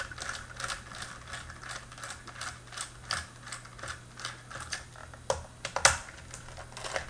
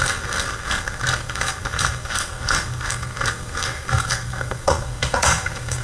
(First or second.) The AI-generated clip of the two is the second